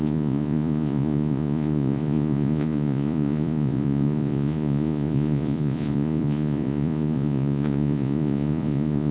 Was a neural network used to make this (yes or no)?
yes